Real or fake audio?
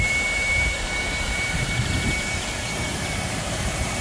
fake